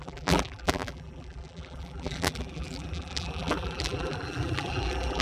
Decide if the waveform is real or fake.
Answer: fake